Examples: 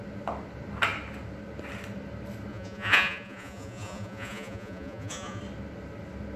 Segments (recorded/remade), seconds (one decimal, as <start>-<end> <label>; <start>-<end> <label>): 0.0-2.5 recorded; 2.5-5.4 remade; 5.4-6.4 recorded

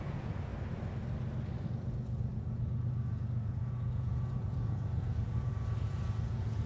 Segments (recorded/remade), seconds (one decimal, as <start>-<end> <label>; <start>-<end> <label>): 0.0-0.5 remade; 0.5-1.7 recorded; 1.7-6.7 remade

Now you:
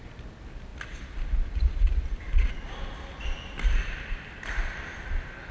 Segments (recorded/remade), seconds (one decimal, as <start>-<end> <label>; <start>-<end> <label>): 0.0-5.5 recorded

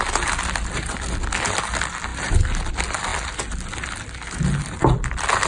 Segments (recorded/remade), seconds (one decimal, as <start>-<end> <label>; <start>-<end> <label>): 0.0-5.5 recorded

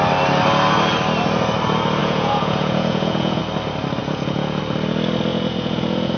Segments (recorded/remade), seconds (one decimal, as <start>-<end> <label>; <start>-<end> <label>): 0.0-2.0 recorded; 2.0-3.4 remade; 3.4-4.0 recorded; 4.0-4.6 remade; 4.6-5.3 recorded; 5.3-6.2 remade

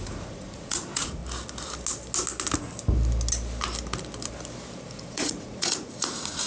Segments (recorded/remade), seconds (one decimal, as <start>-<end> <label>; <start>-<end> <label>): 0.0-1.2 remade; 1.2-4.8 recorded; 4.8-6.5 remade

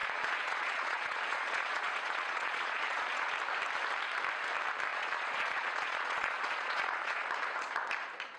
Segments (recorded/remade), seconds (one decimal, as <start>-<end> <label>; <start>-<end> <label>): 0.0-3.3 remade; 3.3-4.9 recorded; 4.9-7.3 remade; 7.3-8.4 recorded